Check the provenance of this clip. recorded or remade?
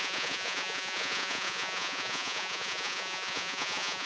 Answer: remade